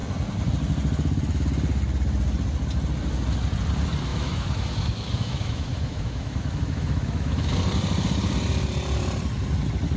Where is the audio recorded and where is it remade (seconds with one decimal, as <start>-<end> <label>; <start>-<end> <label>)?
0.0-4.1 recorded; 4.1-7.5 remade; 7.5-10.0 recorded